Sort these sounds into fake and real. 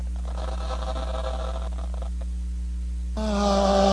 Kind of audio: real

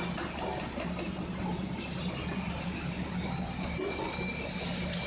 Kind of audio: real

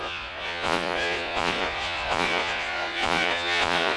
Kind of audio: fake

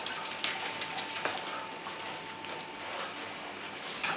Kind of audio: real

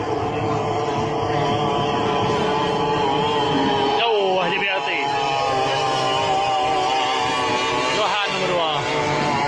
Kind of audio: real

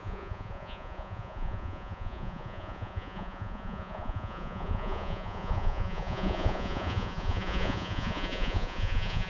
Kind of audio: fake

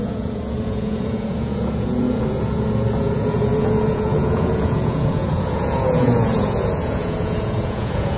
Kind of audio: fake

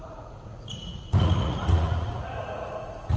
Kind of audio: fake